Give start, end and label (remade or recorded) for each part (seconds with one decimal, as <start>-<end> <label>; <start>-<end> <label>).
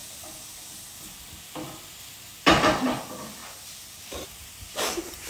0.0-3.4 recorded; 3.4-4.0 remade; 4.0-4.4 recorded; 4.4-5.3 remade